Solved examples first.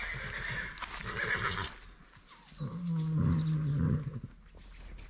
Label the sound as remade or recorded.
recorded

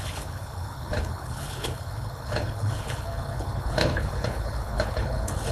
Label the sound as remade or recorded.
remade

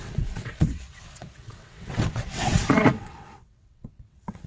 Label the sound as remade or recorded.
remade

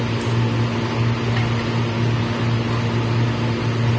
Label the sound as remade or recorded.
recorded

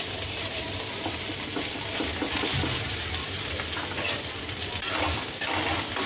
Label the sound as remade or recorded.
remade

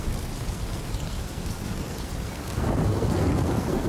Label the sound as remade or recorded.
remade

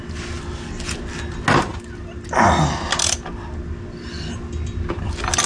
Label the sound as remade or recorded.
recorded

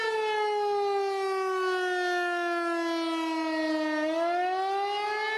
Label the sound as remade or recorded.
recorded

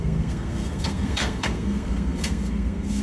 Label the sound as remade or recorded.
remade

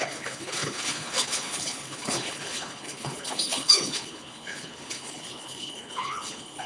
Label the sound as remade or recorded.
remade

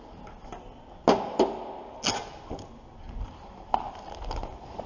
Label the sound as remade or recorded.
recorded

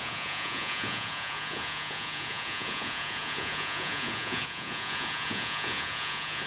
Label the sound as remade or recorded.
remade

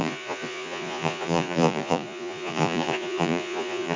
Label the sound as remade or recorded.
remade